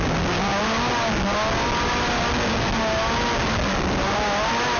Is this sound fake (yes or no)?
no